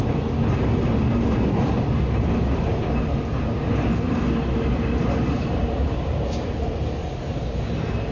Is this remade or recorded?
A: recorded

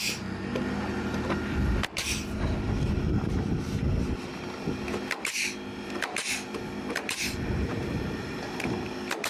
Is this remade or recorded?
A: recorded